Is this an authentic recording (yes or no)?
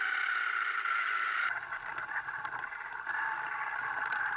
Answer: yes